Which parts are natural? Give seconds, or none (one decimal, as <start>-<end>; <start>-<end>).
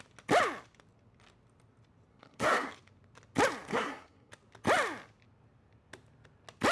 0.0-2.1; 2.7-3.7; 4.3-6.7